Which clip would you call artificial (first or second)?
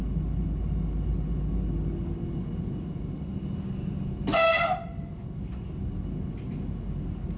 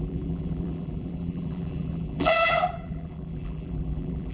second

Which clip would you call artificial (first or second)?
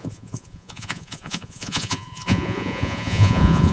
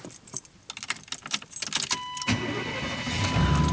first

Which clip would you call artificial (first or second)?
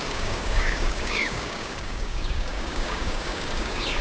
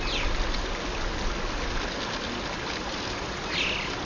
first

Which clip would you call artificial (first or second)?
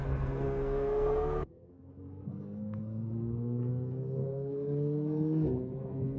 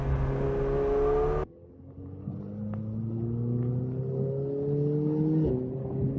first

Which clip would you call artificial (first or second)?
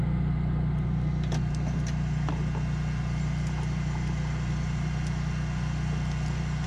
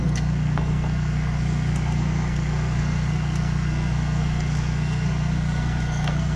second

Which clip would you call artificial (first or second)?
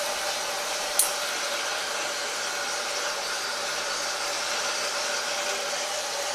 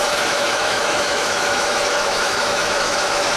second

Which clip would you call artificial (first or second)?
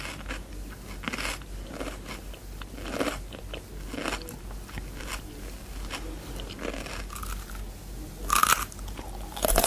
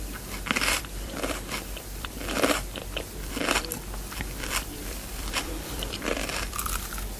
second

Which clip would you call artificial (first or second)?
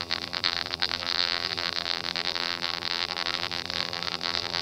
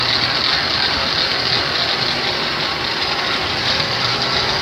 first